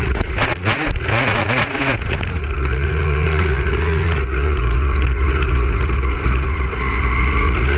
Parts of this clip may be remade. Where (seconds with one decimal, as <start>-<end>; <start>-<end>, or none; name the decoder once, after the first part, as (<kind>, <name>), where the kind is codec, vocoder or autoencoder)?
0.0-7.8 (vocoder, Vocos)